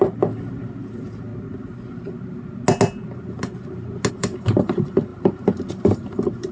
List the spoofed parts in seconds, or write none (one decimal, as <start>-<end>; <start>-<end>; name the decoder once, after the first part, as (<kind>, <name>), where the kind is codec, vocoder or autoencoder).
0.0-1.3 (vocoder, BigVGAN v2); 4.1-6.5